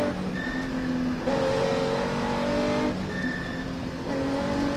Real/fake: real